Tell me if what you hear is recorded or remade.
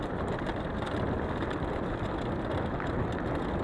recorded